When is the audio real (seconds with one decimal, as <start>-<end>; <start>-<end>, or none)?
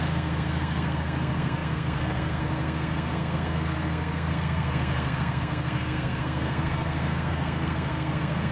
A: none